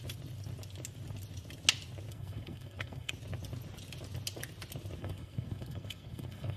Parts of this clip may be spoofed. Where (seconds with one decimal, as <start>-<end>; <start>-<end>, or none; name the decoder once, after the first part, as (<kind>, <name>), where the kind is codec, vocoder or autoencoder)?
2.1-3.1 (codec, SNAC); 5.0-6.6